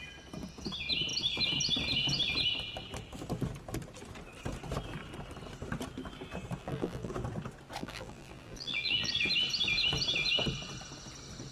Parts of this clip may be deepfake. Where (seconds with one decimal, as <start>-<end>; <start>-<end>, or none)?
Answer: 6.6-7.1; 7.8-9.1